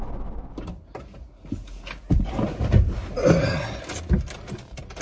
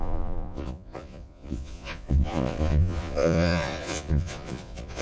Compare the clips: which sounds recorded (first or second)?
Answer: first